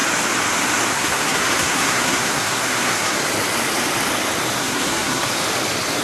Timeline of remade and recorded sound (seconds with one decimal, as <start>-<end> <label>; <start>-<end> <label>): 0.0-0.9 recorded; 0.9-3.2 remade; 3.2-4.6 recorded; 4.6-5.3 remade; 5.3-6.0 recorded